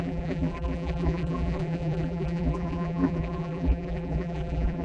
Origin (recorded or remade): remade